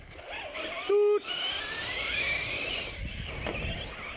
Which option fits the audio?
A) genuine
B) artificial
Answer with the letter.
A